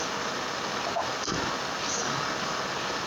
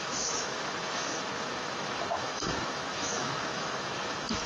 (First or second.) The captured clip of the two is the first